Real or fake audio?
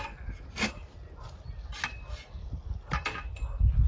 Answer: real